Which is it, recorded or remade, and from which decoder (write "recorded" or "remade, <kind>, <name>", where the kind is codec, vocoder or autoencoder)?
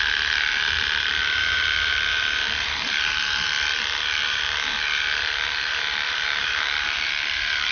remade, vocoder, BigVGAN v2